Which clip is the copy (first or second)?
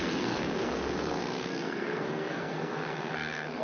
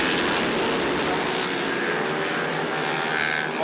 first